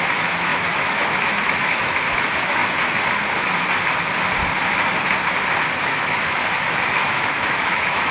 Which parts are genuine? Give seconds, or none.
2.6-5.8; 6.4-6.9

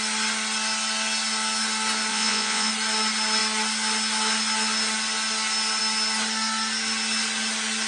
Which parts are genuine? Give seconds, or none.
0.0-2.1; 2.7-7.9

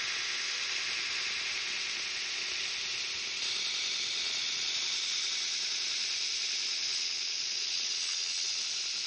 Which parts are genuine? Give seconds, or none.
0.0-4.2; 4.8-6.7; 8.6-9.1

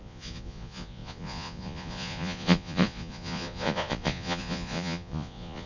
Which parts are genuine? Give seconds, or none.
none

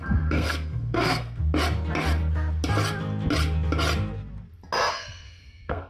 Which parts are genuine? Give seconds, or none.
1.4-4.9

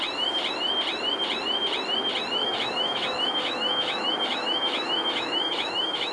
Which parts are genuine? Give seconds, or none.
0.0-2.4